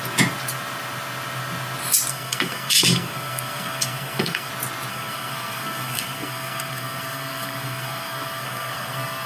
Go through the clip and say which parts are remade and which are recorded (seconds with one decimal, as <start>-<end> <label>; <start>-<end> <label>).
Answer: 0.0-2.1 recorded; 2.1-4.5 remade; 4.5-4.9 recorded; 4.9-9.3 remade